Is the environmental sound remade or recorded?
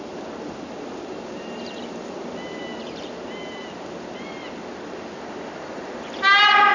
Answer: recorded